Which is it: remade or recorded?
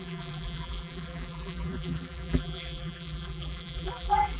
remade